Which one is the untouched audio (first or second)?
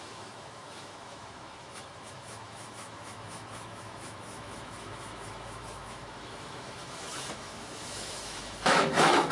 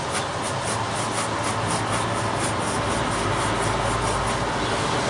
second